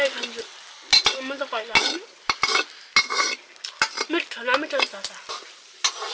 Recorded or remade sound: recorded